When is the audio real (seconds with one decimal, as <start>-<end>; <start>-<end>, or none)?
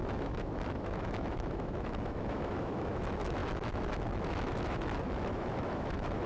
none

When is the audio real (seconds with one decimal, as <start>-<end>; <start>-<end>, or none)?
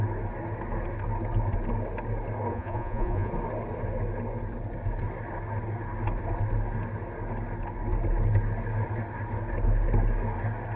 0.0-2.5; 3.3-10.8